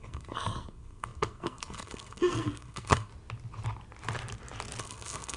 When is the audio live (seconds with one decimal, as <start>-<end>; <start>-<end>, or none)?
3.1-4.8